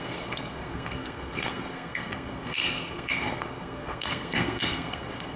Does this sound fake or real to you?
fake